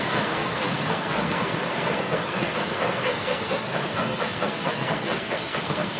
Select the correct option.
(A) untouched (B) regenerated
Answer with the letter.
B